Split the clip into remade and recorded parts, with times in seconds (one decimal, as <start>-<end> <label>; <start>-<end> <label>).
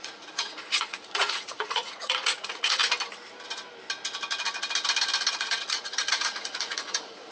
0.0-2.8 remade; 2.8-5.3 recorded; 5.3-7.3 remade